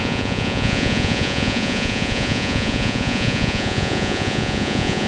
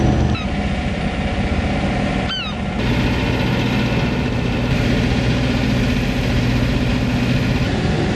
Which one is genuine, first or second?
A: second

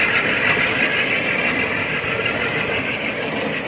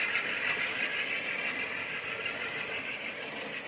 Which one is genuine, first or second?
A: second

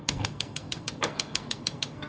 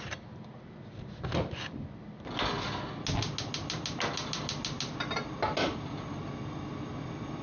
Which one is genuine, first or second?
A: second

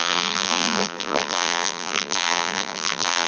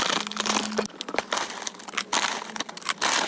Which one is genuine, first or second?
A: second